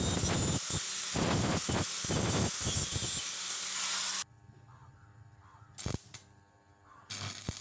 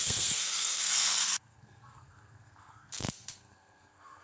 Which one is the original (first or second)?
first